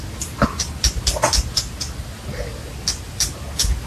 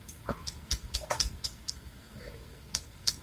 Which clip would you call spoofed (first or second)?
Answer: second